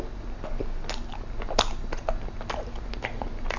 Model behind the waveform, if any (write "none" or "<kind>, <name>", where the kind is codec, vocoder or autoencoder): none